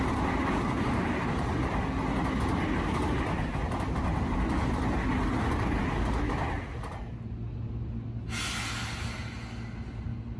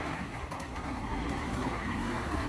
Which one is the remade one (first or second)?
second